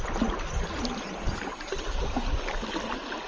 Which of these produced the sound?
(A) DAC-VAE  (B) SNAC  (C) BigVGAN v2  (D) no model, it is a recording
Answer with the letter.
D